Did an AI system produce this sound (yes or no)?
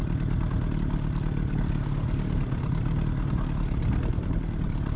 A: no